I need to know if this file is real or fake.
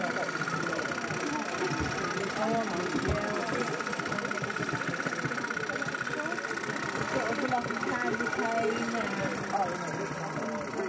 real